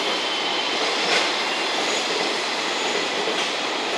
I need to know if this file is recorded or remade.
recorded